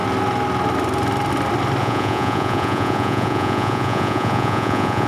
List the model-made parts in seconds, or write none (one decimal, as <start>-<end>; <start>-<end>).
1.8-5.1